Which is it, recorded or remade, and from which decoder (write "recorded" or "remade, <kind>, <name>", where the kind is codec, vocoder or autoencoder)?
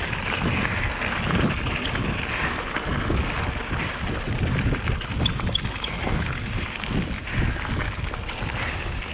recorded